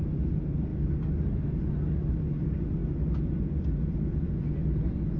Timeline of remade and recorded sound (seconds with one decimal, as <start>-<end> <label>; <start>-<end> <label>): 0.0-5.2 recorded